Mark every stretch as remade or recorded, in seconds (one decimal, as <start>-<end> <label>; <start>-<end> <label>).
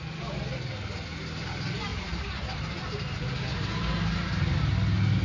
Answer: 0.0-1.9 recorded; 1.9-4.6 remade; 4.6-5.2 recorded